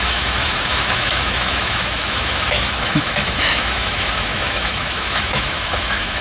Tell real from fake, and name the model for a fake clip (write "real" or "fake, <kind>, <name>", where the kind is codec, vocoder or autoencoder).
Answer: fake, autoencoder, DAC-VAE